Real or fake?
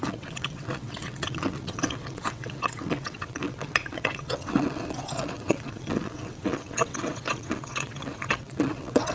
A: fake